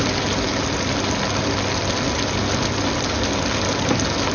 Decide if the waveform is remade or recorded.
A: recorded